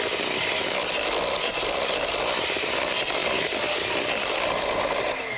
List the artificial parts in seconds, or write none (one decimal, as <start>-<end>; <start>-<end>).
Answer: none